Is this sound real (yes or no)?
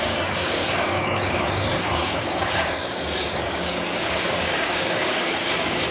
no